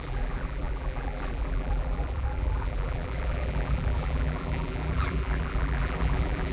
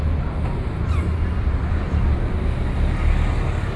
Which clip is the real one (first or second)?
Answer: second